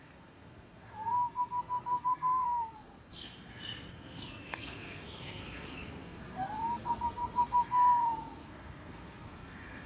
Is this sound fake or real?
fake